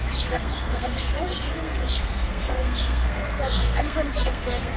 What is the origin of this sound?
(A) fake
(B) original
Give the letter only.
A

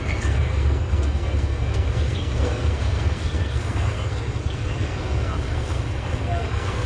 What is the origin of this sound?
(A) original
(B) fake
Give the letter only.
B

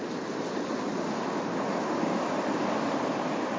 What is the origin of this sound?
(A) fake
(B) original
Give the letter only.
B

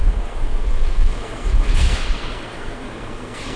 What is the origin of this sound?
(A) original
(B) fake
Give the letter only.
B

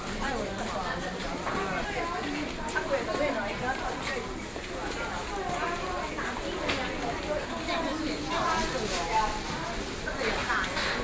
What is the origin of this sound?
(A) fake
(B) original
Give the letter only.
B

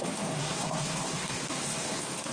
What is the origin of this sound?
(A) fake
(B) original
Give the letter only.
A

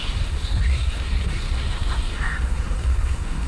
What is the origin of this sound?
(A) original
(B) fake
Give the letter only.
B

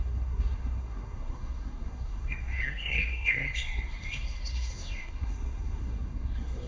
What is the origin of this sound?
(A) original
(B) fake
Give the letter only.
B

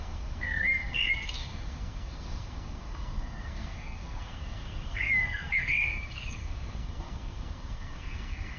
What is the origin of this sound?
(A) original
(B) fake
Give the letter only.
B